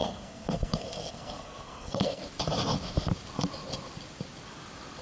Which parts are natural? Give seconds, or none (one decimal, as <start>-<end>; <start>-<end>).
2.2-5.0